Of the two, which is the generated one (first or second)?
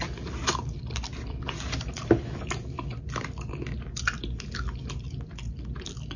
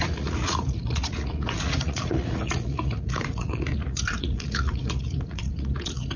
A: second